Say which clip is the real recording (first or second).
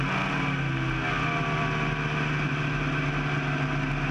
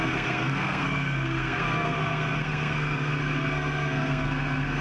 first